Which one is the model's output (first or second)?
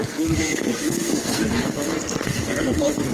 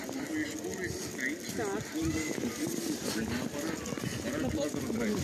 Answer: first